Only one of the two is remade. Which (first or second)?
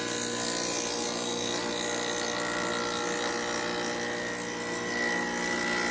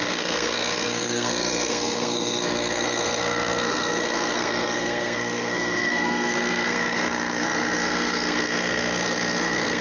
second